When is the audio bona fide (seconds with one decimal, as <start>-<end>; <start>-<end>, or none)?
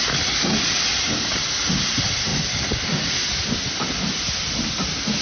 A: 0.0-5.2